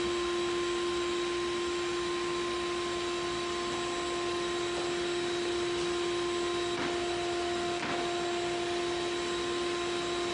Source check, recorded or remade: recorded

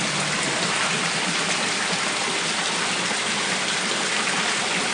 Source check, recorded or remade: recorded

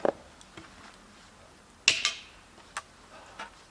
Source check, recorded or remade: recorded